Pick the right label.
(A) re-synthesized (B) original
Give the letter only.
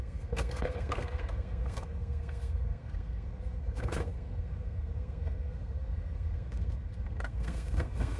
A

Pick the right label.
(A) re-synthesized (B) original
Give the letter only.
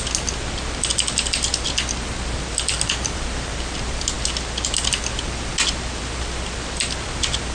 B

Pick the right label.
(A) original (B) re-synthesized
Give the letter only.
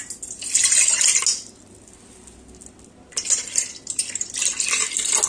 A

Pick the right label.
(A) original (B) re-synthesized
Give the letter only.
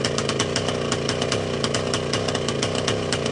A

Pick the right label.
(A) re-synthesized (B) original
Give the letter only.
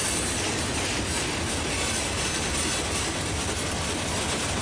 B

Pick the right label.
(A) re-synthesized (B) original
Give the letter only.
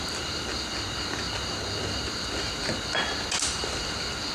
B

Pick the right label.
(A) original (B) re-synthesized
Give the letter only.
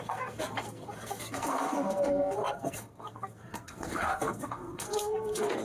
B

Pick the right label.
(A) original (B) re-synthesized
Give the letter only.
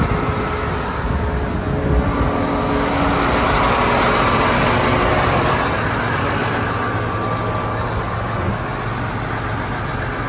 A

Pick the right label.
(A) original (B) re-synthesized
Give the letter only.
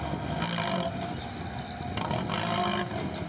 A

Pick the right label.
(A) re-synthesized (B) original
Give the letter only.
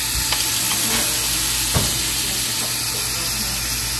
B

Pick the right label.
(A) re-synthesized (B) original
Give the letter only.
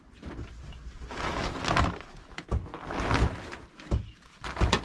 B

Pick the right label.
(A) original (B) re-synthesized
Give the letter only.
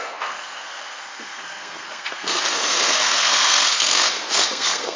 B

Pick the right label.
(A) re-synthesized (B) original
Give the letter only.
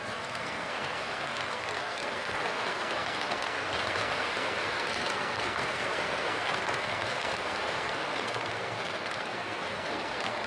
A